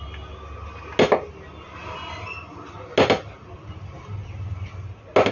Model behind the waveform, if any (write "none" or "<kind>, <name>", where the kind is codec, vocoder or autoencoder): none